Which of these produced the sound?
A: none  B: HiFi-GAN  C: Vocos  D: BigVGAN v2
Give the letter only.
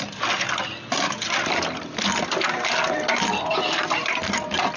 A